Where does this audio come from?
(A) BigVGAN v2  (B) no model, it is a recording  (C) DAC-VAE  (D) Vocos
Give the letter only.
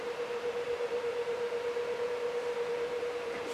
A